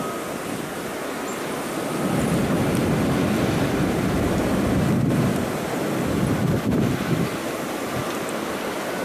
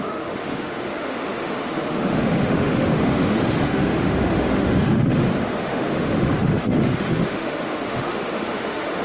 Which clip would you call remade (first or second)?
second